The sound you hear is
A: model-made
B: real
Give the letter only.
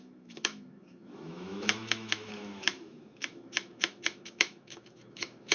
A